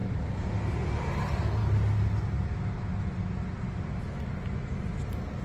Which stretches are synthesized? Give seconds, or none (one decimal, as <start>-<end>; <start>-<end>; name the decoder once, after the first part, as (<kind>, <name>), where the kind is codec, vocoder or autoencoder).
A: none